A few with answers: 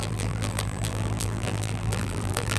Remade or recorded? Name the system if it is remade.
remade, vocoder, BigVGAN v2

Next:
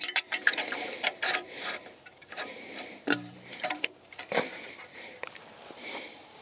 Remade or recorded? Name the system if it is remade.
remade, vocoder, BigVGAN v2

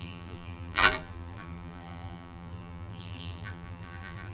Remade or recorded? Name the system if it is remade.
remade, vocoder, BigVGAN v2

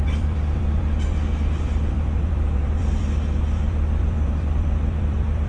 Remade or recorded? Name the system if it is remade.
remade, vocoder, BigVGAN v2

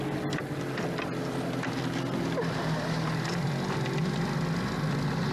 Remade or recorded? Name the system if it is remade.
recorded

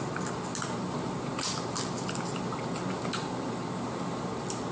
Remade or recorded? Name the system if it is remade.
recorded